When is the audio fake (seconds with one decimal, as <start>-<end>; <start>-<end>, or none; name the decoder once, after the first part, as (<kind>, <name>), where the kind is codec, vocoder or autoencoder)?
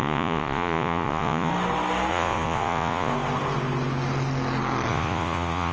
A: 0.0-1.5 (vocoder, Vocos); 2.1-3.1; 4.9-5.7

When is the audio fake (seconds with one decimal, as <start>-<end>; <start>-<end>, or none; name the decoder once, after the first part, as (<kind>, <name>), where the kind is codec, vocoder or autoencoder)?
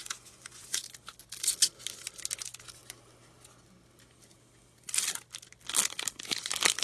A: 0.0-0.8 (vocoder, Vocos)